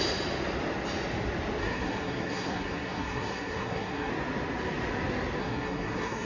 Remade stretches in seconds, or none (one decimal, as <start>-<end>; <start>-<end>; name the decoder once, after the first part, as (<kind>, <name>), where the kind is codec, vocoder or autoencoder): 1.6-4.1 (codec, SNAC); 5.4-6.3